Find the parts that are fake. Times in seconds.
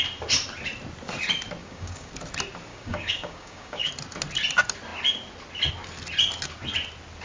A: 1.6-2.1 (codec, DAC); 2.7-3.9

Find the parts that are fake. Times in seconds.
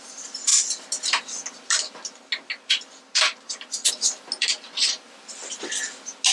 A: none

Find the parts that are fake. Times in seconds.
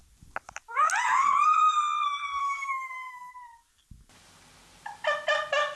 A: 2.4-3.3 (codec, SNAC)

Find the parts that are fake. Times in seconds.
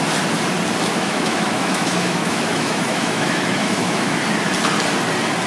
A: 0.9-4.2 (autoencoder, DAC-VAE)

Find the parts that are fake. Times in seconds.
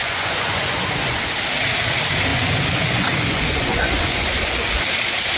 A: 0.0-1.3 (vocoder, Vocos); 2.3-4.8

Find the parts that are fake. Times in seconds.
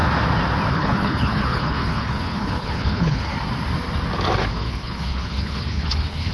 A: 0.7-3.3 (codec, HILCodec); 4.5-6.3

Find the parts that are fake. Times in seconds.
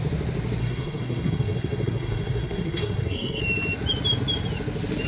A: 0.6-3.4 (codec, SNAC)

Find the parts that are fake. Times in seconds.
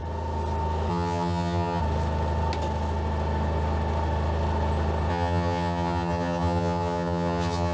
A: 0.9-1.8 (vocoder, HiFi-GAN); 5.1-7.7